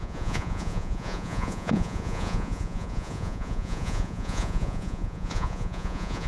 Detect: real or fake fake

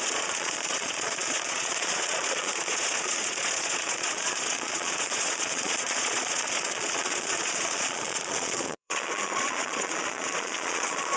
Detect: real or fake fake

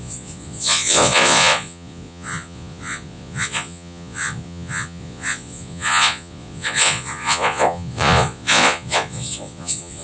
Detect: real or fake fake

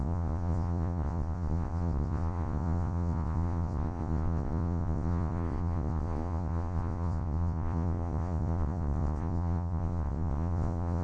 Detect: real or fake fake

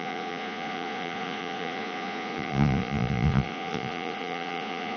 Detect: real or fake fake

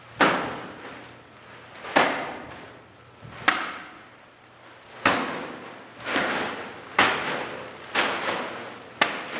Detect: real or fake real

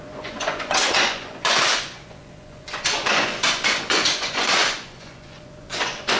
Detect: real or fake fake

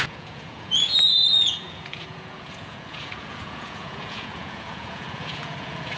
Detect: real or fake fake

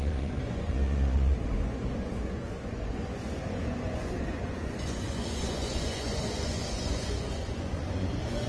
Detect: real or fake fake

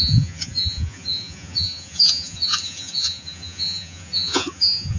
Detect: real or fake fake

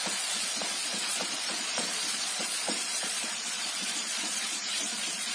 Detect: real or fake fake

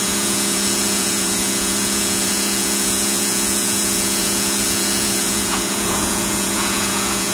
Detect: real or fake fake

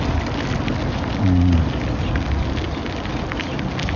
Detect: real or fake real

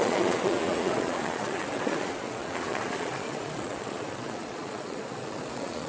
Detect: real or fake fake